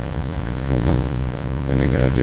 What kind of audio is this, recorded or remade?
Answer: remade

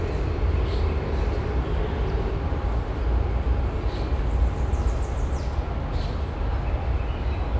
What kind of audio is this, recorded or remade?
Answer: recorded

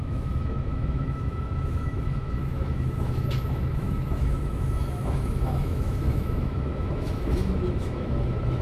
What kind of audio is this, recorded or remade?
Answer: remade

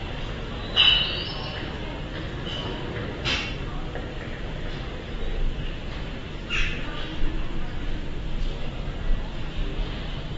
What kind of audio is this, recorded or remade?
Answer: recorded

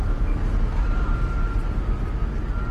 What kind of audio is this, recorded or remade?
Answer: recorded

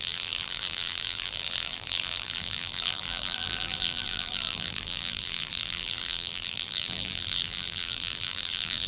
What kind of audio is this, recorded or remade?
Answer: remade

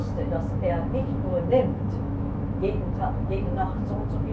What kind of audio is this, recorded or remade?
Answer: remade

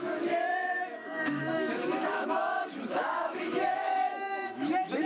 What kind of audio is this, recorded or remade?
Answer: remade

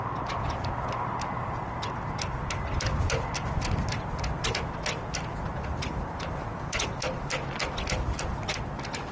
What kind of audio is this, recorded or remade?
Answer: recorded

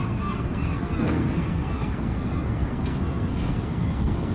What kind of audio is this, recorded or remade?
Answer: remade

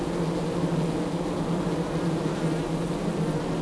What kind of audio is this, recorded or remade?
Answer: recorded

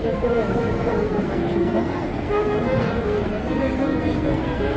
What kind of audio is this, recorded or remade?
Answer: remade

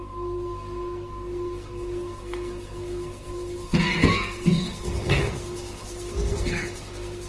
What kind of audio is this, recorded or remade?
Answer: remade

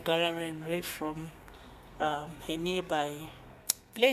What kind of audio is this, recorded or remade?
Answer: remade